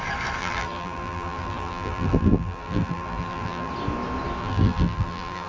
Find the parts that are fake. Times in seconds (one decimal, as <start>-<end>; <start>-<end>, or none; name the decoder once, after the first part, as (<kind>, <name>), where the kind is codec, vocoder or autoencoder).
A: 0.4-3.7 (vocoder, BigVGAN v2); 4.4-5.5